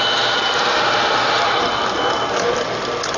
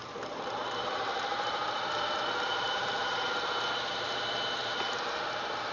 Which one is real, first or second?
first